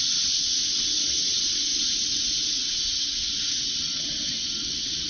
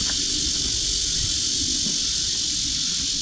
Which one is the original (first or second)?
second